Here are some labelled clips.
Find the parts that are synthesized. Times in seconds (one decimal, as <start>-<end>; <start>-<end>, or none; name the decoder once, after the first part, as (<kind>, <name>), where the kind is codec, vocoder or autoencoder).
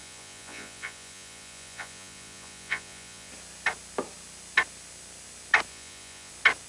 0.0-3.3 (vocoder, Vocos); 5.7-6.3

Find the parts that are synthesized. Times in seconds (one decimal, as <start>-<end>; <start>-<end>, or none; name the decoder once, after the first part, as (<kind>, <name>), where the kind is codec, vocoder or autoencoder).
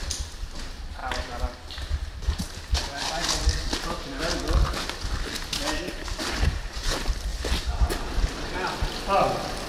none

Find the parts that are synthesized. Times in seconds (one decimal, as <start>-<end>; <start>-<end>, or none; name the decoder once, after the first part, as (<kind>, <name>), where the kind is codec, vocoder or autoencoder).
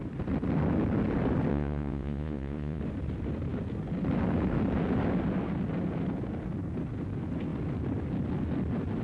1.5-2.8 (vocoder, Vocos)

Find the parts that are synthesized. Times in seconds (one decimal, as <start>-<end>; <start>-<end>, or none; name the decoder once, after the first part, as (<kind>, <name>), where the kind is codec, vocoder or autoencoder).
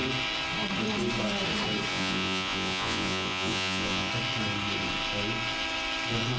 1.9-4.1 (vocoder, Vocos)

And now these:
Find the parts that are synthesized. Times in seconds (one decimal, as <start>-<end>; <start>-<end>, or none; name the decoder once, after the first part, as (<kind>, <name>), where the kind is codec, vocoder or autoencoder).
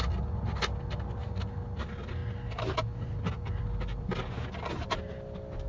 none